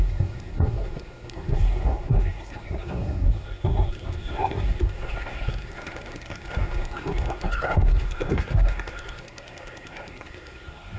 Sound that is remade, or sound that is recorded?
remade